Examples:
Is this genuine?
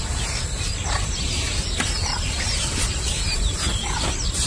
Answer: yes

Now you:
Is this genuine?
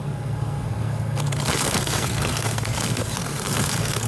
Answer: no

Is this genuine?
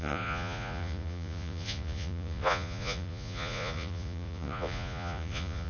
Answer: no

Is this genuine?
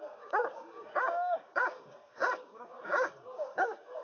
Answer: no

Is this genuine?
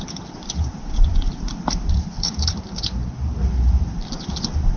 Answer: no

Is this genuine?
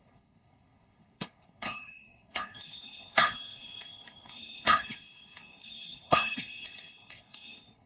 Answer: no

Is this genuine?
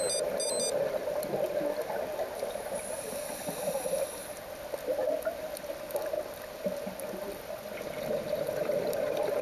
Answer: yes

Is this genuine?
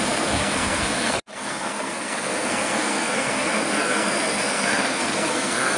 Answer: no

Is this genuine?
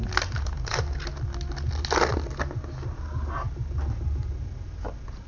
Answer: yes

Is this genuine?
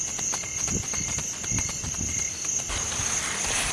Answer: yes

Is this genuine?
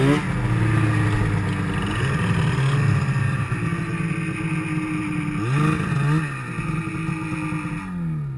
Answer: yes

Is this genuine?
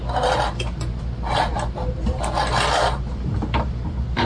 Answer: yes